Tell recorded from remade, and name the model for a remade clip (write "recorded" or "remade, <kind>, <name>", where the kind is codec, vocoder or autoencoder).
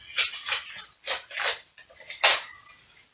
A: recorded